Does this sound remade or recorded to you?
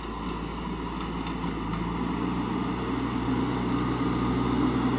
recorded